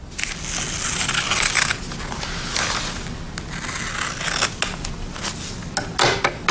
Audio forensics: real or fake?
real